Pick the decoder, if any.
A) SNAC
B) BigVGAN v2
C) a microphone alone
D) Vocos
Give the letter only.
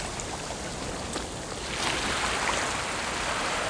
C